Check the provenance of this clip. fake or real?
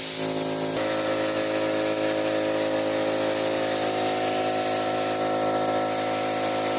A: real